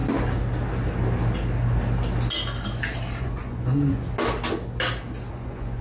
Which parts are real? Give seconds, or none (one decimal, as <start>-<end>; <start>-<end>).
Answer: 0.0-3.2; 4.1-5.3